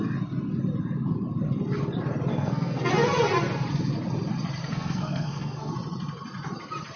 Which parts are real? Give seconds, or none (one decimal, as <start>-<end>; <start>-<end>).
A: 0.0-2.3; 2.9-4.6; 5.7-7.0